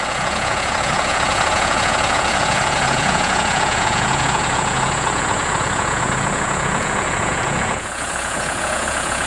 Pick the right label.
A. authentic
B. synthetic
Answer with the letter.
B